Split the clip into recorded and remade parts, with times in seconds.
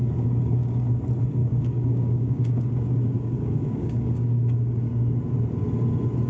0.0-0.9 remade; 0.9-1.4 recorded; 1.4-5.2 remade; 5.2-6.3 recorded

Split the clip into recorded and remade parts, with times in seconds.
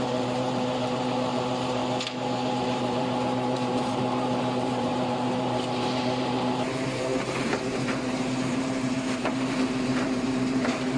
0.0-1.8 remade; 1.8-2.5 recorded; 2.5-11.0 remade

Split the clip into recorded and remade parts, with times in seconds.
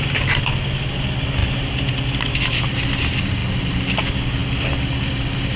0.0-1.4 recorded; 1.4-2.1 remade; 2.1-3.4 recorded; 3.4-4.0 remade; 4.0-5.6 recorded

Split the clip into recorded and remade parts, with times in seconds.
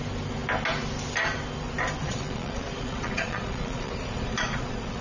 0.0-2.0 recorded; 2.0-5.0 remade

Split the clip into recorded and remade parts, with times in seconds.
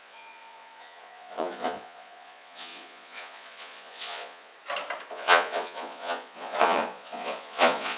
0.0-4.5 remade; 4.5-5.1 recorded; 5.1-8.0 remade